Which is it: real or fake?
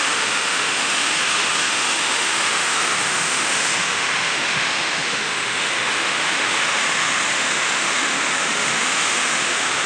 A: fake